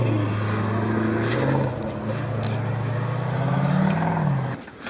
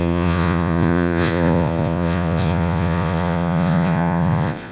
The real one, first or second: first